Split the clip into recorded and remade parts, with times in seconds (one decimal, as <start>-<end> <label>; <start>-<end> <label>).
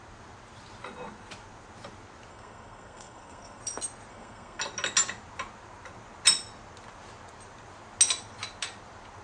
0.0-2.3 recorded; 2.3-3.6 remade; 3.6-4.1 recorded; 4.1-4.6 remade; 4.6-9.2 recorded